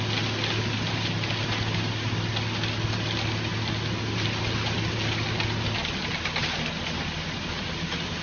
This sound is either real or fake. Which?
real